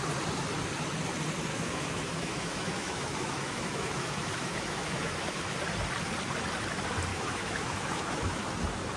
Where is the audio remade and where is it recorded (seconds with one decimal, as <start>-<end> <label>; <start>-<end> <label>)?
0.0-1.5 recorded; 1.5-5.4 remade; 5.4-7.1 recorded; 7.1-8.5 remade; 8.5-9.0 recorded